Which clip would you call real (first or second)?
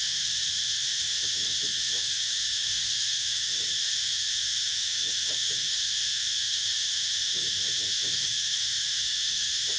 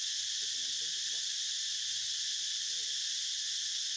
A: second